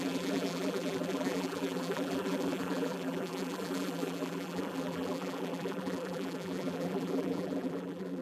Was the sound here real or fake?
fake